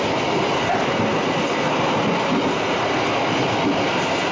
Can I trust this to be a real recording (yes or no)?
yes